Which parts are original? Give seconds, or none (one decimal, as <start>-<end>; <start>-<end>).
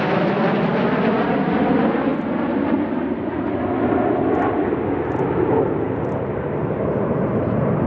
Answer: 0.0-7.9